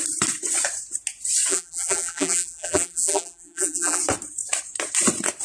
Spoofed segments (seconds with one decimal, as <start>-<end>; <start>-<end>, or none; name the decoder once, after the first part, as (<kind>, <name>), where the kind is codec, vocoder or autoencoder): 1.5-4.0 (vocoder, BigVGAN v2)

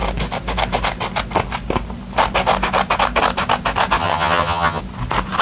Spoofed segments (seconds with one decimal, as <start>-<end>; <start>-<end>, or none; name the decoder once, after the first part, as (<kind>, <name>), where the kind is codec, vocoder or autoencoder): 4.0-4.8 (vocoder, HiFi-GAN)